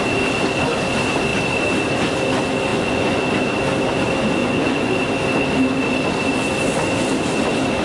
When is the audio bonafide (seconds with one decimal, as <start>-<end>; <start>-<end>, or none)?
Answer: 0.0-2.7; 3.2-4.4; 5.0-7.8

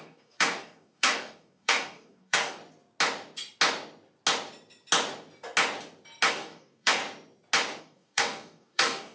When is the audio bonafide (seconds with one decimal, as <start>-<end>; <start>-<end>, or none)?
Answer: 2.6-6.3; 7.0-7.8

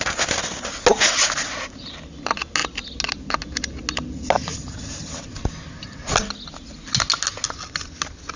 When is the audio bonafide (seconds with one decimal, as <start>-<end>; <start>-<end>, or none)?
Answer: 0.0-8.4

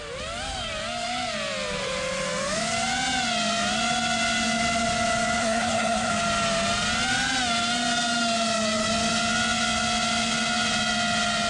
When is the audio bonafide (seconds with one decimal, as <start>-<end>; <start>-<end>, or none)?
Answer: 0.0-5.4; 6.1-11.5

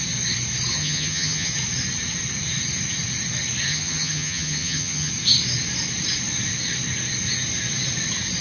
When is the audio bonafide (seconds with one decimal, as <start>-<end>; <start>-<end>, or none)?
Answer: 0.0-0.7; 1.5-3.7; 5.1-8.4

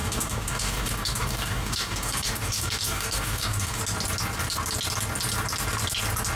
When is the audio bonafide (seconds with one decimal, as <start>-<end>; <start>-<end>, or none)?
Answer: 3.8-6.4